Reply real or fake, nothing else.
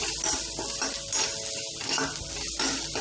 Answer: real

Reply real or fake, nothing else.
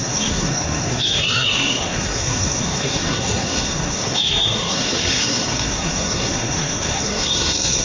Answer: fake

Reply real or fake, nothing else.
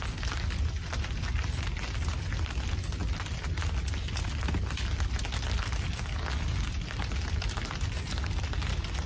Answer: real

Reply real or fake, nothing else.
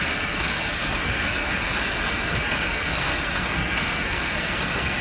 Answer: fake